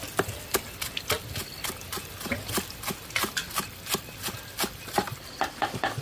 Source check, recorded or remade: remade